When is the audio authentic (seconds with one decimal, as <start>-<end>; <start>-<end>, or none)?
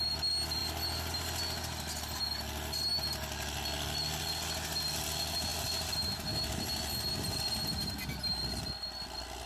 0.0-9.5